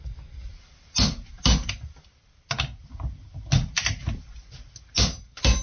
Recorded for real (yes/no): yes